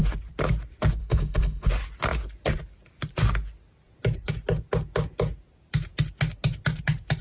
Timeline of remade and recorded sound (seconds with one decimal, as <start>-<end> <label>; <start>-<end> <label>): 0.0-1.0 recorded; 1.0-1.7 remade; 1.7-7.2 recorded